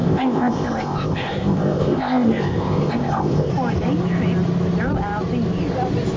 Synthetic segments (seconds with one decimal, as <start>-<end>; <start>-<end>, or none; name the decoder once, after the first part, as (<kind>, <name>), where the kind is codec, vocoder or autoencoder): 0.0-3.5 (codec, ZipCodec)